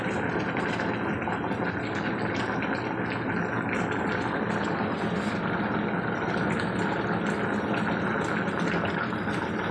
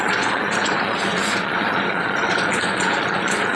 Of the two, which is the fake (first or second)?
second